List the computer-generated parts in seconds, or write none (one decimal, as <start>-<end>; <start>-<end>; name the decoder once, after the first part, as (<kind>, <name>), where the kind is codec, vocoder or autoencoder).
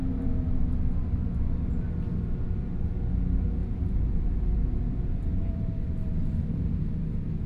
3.6-6.8 (vocoder, BigVGAN v2)